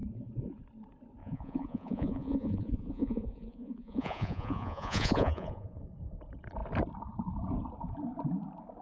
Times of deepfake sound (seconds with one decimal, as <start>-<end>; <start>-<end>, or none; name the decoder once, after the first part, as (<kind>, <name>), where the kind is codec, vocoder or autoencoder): 0.0-0.6 (vocoder, Vocos); 1.2-5.8